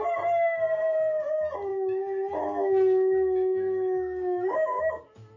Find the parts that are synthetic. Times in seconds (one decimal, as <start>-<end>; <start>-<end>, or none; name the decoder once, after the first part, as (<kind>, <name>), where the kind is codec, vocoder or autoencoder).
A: 1.7-4.9 (autoencoder, DAC-VAE)